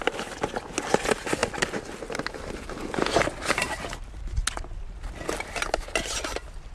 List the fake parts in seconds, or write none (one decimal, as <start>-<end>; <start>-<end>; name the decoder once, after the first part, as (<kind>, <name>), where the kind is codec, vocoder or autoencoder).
none